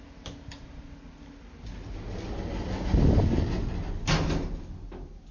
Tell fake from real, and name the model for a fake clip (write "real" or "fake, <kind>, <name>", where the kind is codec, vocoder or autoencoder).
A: real